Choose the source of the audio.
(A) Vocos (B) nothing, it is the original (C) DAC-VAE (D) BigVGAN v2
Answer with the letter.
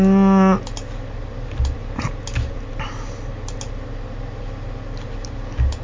B